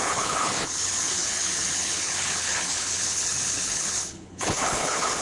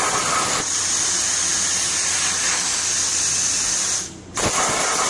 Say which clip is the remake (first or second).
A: first